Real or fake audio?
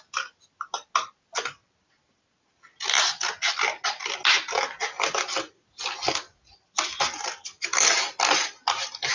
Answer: real